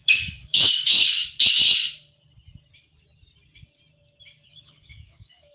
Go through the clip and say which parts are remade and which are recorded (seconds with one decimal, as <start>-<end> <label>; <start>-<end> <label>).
0.0-1.2 remade; 1.2-4.5 recorded; 4.5-5.5 remade